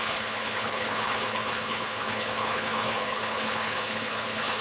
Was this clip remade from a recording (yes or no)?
yes